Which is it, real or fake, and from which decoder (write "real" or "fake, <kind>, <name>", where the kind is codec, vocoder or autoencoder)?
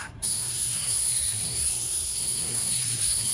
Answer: fake, codec, SNAC